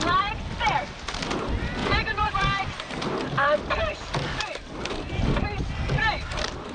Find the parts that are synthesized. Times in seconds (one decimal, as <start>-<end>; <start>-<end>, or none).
1.8-2.3